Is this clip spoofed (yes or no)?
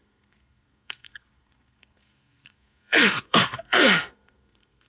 yes